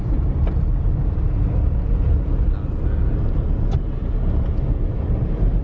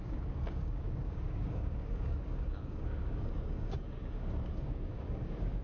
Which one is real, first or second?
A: first